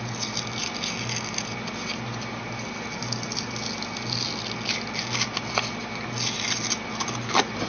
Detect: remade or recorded recorded